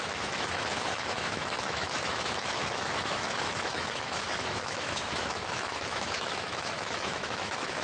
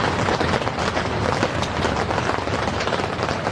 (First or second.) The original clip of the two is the second